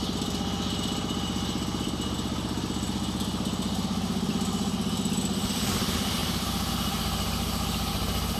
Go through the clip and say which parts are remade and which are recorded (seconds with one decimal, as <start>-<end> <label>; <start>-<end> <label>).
0.0-3.8 recorded; 3.8-8.4 remade